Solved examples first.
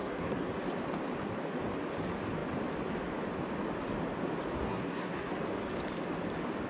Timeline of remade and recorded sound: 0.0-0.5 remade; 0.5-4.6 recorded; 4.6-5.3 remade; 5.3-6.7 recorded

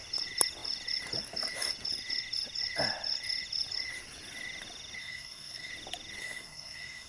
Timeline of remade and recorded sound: 0.0-5.0 recorded; 5.0-5.7 remade; 5.7-6.2 recorded; 6.2-7.1 remade